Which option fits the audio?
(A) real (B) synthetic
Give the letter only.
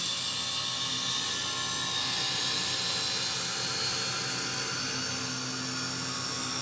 A